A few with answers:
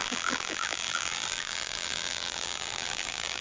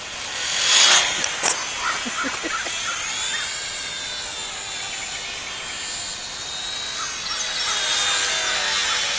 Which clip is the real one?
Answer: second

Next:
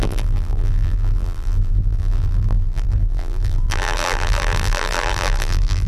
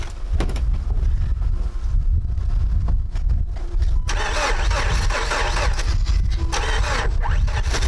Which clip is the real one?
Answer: second